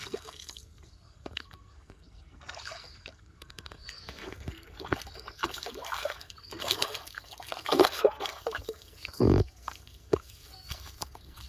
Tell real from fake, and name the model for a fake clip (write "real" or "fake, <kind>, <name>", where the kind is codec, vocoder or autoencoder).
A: fake, codec, SNAC